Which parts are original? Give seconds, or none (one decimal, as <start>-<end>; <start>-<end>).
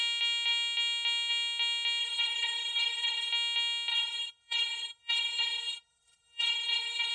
0.0-2.0; 3.3-3.9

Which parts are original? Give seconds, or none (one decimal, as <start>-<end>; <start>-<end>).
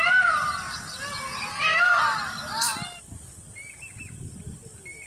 0.0-1.5; 2.0-5.1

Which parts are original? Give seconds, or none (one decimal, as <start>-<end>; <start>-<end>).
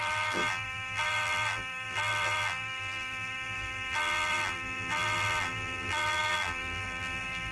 none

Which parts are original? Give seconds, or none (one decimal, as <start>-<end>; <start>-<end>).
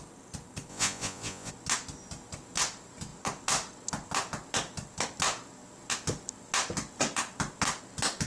0.0-0.7; 1.5-8.3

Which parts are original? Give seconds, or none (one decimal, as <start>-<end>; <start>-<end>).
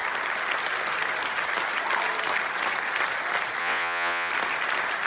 0.0-3.6; 4.3-5.1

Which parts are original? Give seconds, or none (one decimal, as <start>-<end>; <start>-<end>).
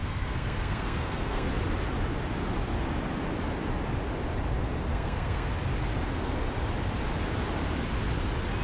1.5-4.9; 5.5-8.6